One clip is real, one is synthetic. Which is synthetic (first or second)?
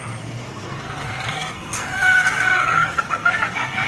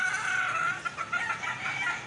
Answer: first